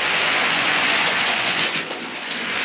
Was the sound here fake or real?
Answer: fake